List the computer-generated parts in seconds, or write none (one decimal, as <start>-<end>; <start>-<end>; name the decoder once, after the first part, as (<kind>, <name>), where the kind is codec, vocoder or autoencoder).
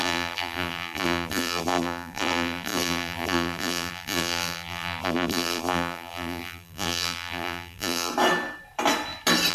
0.0-8.1 (vocoder, BigVGAN v2)